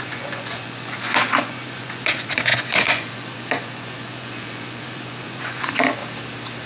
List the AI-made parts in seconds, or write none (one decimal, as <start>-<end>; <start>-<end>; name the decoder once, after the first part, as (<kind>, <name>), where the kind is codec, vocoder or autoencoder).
0.0-6.0 (vocoder, Vocos)